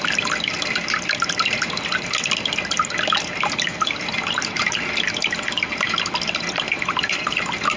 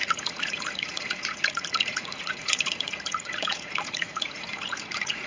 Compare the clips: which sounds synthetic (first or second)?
second